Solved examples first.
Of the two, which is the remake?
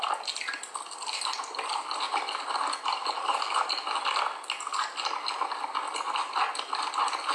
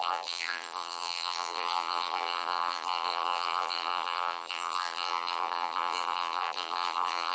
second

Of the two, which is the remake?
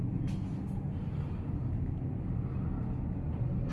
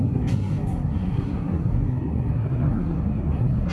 second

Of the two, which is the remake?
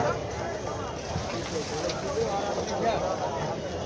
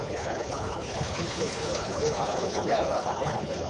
second